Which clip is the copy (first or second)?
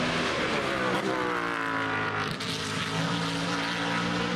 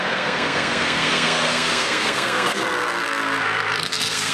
second